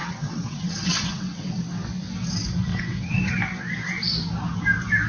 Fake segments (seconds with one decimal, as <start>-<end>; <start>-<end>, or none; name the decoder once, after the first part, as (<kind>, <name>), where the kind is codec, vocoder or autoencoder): 0.0-1.6 (vocoder, WaveNeXt); 2.7-3.3